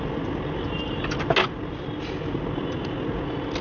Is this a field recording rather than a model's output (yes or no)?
yes